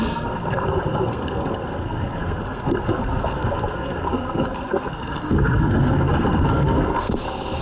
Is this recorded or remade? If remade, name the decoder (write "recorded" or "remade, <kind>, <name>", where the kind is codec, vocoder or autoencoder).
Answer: remade, codec, SNAC